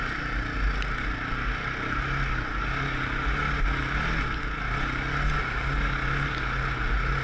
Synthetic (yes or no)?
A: no